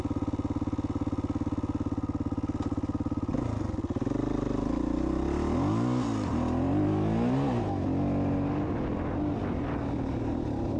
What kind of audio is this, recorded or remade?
recorded